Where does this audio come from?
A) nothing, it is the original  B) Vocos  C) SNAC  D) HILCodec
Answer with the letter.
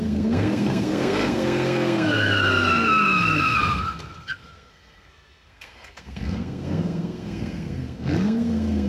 C